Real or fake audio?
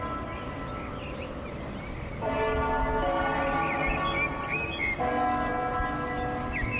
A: real